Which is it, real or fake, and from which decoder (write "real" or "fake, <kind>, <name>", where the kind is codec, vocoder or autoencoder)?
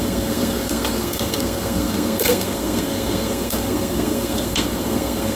fake, codec, SNAC